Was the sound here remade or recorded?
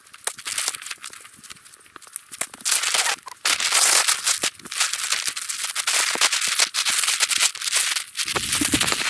recorded